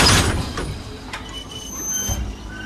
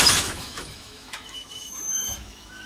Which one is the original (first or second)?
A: first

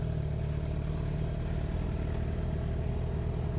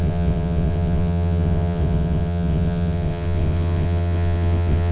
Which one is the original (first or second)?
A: first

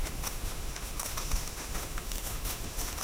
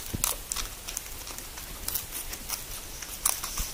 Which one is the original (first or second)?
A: second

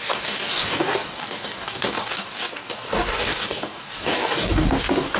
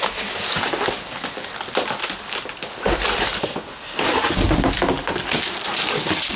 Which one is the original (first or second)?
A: second